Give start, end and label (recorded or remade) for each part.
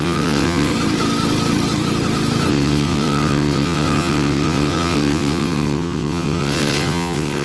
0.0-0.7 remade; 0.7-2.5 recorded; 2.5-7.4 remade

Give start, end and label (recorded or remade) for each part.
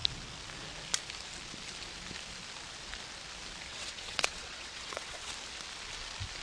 0.0-3.7 recorded; 3.7-5.3 remade; 5.3-6.4 recorded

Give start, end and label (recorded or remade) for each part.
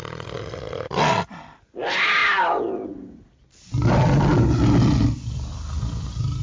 0.0-6.4 recorded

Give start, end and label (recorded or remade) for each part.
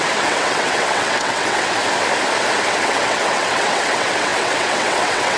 0.0-1.8 remade; 1.8-2.7 recorded; 2.7-5.4 remade